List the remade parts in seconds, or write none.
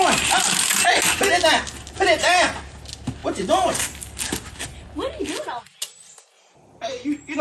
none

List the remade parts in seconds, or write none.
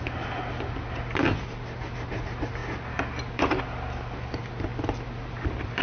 none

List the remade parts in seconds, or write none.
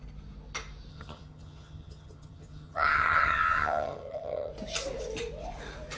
0.9-4.5 (vocoder, HiFi-GAN)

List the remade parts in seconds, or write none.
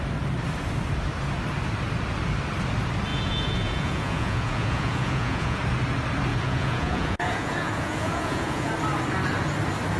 3.1-5.6 (vocoder, Vocos); 6.3-8.7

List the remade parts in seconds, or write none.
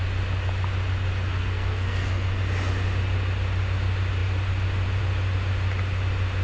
1.3-2.4 (codec, SNAC)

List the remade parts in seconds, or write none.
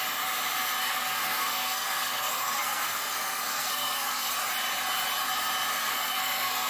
0.8-4.3 (codec, SNAC); 5.7-6.7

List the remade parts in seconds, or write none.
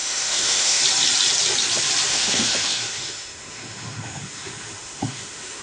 0.0-0.8 (autoencoder, DAC-VAE); 2.1-5.6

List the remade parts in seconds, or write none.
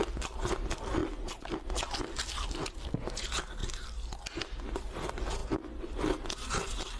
none